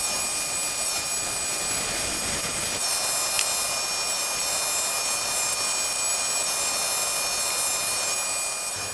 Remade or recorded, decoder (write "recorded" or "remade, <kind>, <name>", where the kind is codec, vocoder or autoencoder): recorded